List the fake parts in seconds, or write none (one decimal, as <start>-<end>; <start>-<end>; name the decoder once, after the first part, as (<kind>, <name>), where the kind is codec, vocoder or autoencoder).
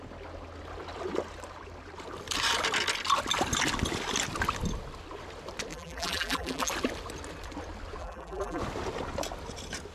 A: 5.7-6.7 (vocoder, BigVGAN v2); 8.0-8.6